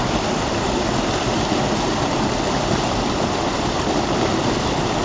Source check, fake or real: real